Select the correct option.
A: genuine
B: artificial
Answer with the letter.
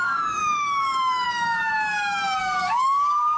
B